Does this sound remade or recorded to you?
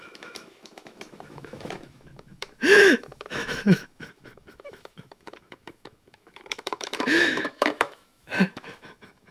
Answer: remade